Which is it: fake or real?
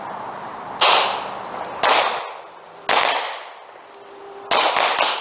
real